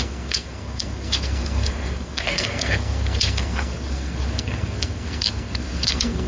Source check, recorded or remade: remade